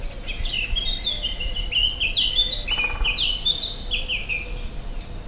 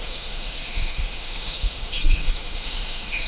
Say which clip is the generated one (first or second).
second